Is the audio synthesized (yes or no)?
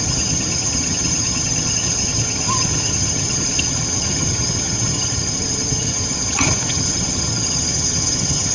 yes